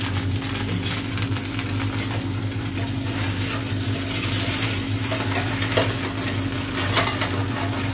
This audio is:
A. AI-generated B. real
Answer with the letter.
B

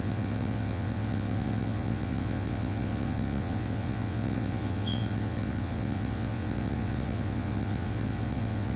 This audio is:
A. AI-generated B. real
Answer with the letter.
A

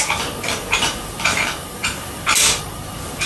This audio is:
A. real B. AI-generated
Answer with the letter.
A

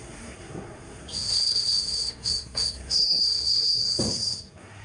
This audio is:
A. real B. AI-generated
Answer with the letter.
B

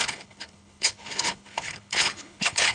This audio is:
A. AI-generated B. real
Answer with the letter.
A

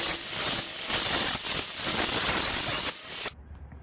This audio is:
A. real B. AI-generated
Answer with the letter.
A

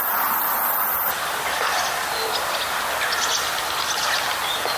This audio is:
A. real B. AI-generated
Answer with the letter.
A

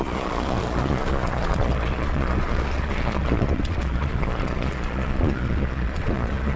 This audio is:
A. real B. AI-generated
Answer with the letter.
B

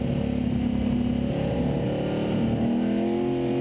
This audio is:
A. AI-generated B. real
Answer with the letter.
B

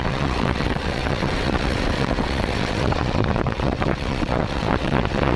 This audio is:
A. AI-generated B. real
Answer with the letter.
A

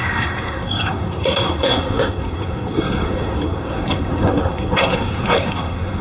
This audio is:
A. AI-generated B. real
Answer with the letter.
A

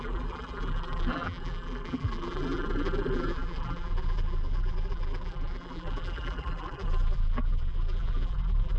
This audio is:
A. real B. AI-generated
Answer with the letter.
B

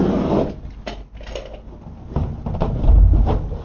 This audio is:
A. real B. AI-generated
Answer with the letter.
A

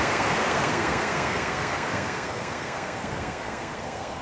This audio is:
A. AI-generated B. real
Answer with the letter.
A